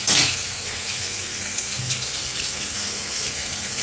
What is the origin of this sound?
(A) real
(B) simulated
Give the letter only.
B